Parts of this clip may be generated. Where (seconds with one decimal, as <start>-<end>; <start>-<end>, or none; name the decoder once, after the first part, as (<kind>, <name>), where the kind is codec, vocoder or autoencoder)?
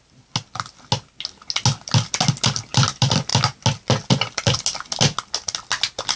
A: none